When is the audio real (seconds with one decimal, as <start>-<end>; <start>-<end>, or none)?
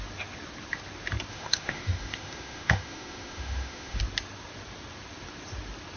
0.0-1.3; 4.0-6.0